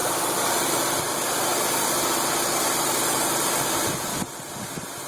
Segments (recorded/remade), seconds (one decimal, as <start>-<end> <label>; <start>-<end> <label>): 0.0-4.1 remade; 4.1-5.1 recorded